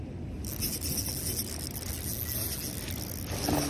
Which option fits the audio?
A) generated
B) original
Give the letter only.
B